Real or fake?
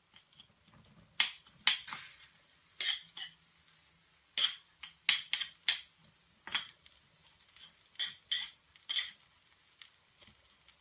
real